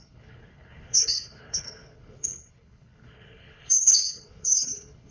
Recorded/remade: remade